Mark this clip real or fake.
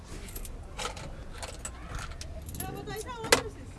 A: real